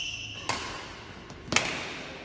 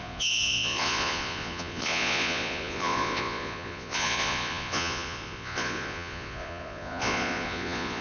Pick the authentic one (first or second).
first